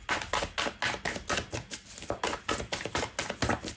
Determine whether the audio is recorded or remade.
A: recorded